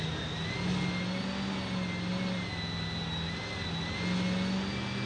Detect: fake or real real